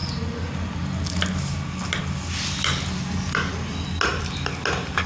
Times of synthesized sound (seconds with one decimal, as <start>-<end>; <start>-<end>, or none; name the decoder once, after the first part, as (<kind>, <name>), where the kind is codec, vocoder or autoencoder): none